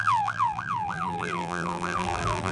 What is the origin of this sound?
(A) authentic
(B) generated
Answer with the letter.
B